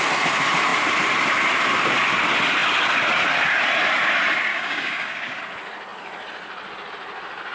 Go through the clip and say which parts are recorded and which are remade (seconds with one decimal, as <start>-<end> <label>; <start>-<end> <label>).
0.0-4.5 recorded; 4.5-5.4 remade; 5.4-7.5 recorded